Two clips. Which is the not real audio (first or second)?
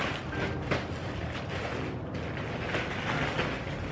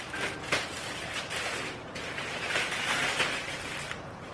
second